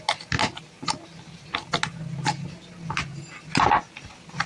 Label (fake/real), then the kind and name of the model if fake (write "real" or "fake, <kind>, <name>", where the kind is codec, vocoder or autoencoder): real